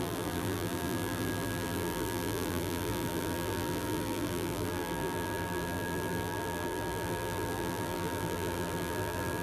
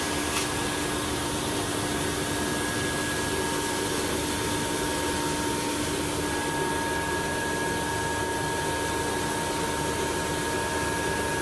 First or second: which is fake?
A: first